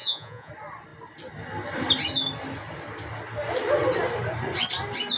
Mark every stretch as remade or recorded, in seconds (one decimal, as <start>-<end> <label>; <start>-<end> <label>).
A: 0.0-0.5 remade; 0.5-5.2 recorded